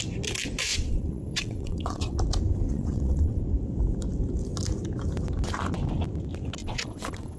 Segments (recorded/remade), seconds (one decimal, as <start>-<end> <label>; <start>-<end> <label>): 0.0-0.7 recorded; 0.7-2.2 remade; 2.2-2.7 recorded; 2.7-3.4 remade; 3.4-6.6 recorded; 6.6-7.4 remade